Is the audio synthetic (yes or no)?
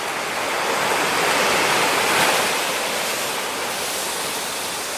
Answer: no